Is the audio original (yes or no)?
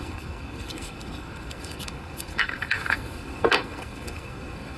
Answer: no